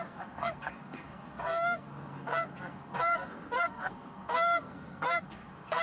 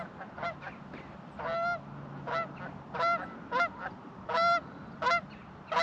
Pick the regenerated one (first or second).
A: first